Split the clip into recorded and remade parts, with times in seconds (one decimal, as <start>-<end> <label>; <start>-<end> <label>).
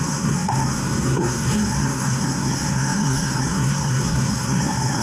0.0-5.0 remade